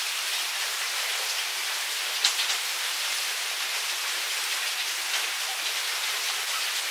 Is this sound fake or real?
real